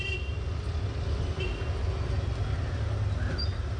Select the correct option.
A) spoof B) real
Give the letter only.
B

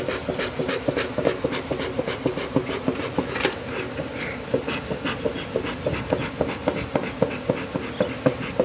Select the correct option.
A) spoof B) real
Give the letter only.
B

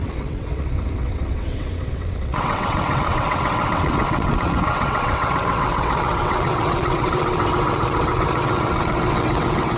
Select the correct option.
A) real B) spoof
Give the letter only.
B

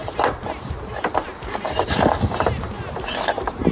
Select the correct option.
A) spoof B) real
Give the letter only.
B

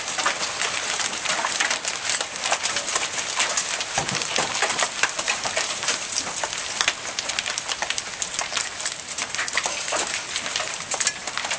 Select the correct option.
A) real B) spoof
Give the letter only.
A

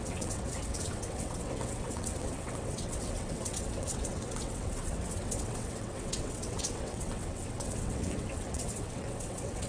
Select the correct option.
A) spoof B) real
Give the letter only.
A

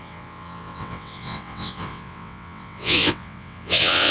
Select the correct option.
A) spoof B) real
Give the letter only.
A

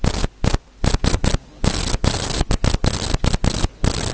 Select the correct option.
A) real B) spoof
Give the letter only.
A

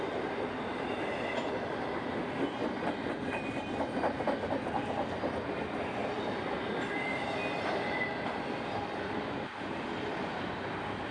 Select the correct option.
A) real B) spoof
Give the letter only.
A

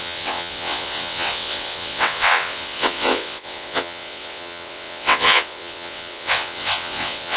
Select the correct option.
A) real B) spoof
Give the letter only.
B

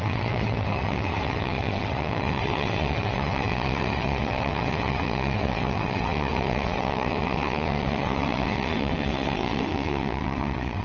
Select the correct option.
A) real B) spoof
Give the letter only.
B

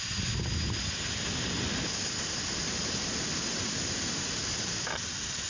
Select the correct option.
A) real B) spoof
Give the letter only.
A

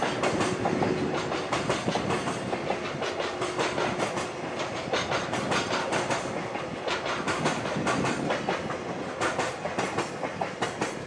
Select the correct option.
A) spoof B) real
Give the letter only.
B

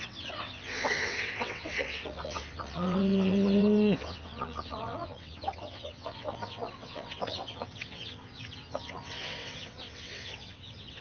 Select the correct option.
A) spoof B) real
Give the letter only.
A